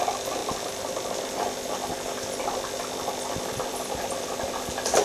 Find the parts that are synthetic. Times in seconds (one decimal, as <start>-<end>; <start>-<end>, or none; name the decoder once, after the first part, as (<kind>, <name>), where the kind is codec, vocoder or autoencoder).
none